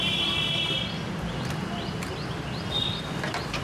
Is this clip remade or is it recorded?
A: recorded